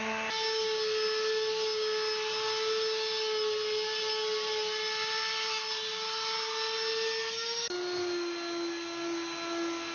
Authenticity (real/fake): real